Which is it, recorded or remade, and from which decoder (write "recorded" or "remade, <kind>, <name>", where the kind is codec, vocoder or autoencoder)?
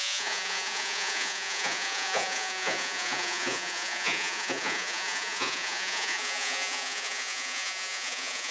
remade, vocoder, Vocos